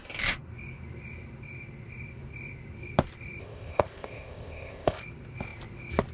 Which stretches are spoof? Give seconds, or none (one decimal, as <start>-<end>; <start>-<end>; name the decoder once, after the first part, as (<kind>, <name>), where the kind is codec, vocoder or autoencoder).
3.4-5.0 (codec, ZipCodec)